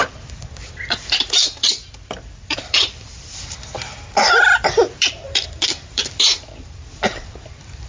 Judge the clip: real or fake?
fake